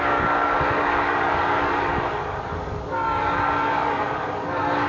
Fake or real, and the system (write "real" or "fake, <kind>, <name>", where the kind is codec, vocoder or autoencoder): fake, codec, DAC